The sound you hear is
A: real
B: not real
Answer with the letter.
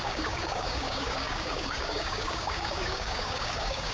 B